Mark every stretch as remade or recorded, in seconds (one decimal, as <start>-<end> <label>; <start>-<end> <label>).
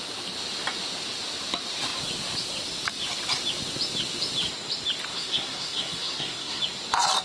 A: 0.0-5.1 recorded; 5.1-6.6 remade; 6.6-7.2 recorded